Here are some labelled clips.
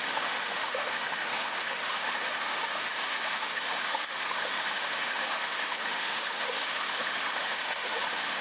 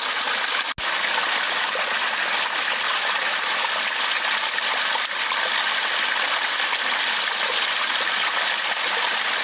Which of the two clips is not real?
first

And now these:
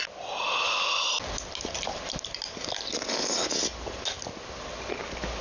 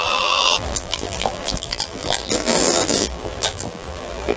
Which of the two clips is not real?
second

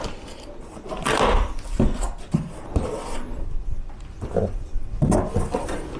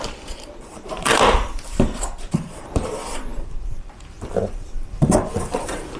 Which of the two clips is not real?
second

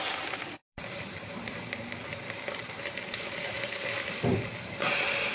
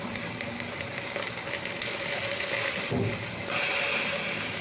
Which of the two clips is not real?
first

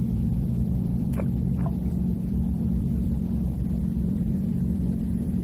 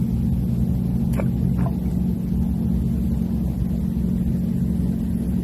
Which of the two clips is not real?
first